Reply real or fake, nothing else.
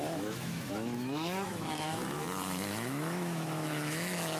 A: fake